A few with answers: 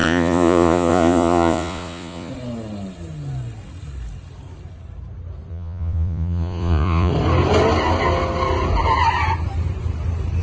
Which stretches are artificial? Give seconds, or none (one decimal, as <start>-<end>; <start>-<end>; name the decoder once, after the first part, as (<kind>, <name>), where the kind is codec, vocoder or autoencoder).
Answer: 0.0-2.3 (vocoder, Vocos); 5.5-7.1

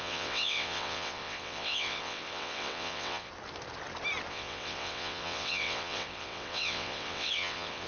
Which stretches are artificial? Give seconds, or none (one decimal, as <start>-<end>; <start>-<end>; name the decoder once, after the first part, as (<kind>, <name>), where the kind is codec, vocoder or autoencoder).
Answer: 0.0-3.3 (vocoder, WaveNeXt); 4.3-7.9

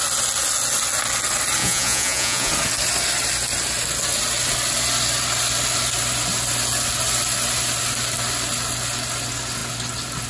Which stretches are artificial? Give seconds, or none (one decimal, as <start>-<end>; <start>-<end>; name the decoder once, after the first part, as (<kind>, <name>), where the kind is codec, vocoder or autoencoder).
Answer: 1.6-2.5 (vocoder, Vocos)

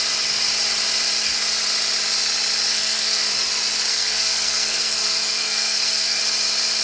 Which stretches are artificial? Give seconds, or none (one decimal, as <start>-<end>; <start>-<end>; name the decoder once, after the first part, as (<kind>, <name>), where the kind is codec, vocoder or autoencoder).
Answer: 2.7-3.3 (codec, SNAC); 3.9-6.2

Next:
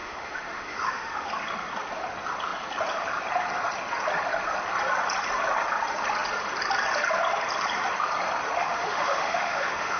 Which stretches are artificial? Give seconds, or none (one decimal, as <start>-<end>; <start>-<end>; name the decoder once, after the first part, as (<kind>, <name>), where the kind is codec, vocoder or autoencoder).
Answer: 0.0-1.3 (autoencoder, DAC-VAE); 8.6-10.0

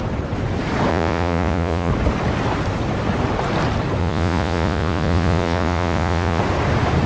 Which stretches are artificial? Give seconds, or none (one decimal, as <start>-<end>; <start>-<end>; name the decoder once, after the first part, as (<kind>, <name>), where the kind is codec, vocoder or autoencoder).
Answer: 0.9-1.9 (vocoder, Vocos); 4.0-6.4

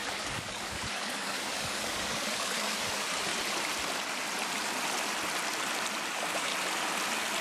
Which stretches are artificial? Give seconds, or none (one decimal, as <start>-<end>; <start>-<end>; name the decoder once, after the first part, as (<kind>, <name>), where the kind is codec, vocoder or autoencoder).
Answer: 0.0-3.3 (codec, DAC); 6.1-6.5

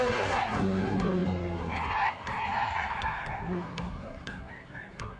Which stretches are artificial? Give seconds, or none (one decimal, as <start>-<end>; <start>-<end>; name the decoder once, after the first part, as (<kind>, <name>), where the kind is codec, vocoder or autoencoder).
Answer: 0.0-5.2 (codec, SNAC)